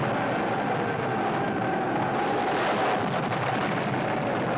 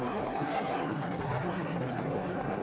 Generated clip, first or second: second